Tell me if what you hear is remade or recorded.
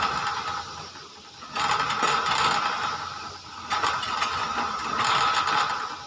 recorded